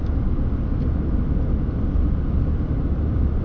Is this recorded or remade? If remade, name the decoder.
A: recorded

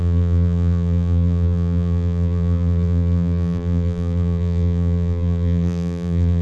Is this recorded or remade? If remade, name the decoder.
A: remade, vocoder, BigVGAN v2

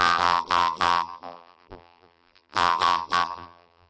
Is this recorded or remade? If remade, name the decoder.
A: remade, vocoder, BigVGAN v2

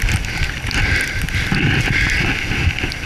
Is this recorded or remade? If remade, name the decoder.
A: recorded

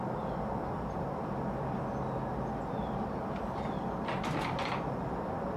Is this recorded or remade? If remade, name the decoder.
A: recorded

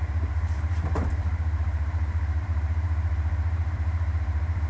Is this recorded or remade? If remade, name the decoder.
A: remade, vocoder, BigVGAN v2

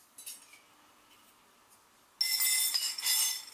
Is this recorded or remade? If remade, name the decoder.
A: recorded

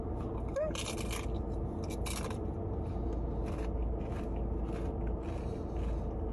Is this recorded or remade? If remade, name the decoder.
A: recorded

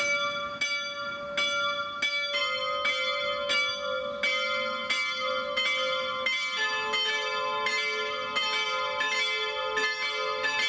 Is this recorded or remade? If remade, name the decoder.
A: recorded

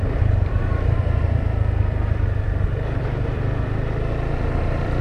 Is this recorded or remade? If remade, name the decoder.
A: remade, vocoder, BigVGAN v2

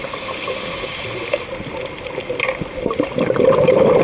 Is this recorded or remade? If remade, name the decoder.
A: recorded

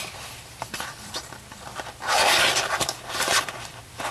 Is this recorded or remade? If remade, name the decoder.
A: remade, vocoder, BigVGAN v2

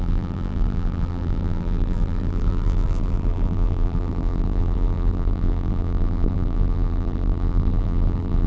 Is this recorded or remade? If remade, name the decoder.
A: remade, vocoder, BigVGAN v2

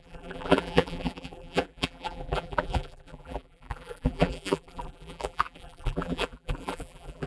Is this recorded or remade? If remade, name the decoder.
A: remade, vocoder, BigVGAN v2